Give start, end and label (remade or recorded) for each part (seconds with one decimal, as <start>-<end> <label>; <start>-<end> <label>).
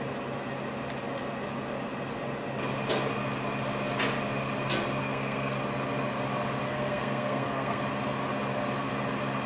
0.0-5.0 recorded; 5.0-5.6 remade; 5.6-6.6 recorded; 6.6-7.8 remade; 7.8-9.5 recorded